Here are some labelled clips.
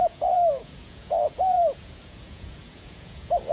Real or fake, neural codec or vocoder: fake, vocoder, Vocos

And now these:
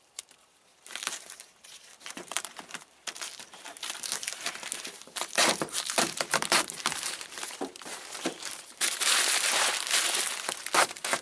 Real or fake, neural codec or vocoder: fake, vocoder, BigVGAN v2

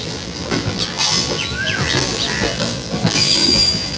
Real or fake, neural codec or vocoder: fake, vocoder, BigVGAN v2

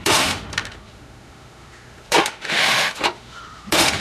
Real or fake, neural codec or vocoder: fake, autoencoder, DAC-VAE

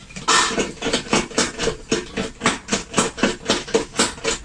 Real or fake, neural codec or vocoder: real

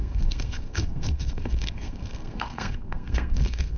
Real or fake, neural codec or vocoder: fake, codec, SNAC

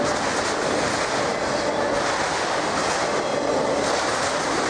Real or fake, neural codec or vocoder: real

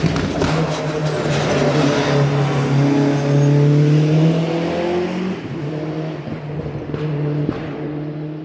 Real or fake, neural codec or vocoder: real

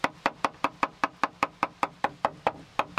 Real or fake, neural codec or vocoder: real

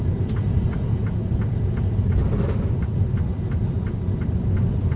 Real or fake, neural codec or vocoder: real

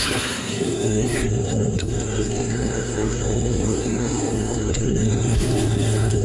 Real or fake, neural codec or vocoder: fake, codec, SNAC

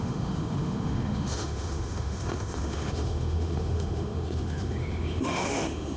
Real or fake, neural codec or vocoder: fake, autoencoder, DAC-VAE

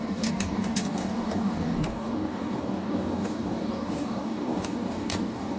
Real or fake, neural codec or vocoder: fake, codec, DAC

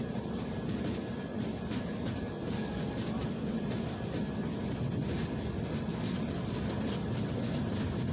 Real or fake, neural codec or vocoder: real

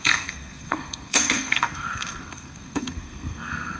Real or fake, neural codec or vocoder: fake, codec, SNAC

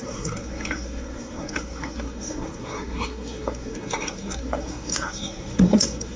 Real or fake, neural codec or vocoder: fake, codec, SNAC